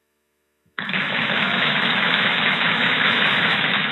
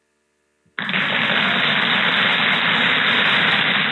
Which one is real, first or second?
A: second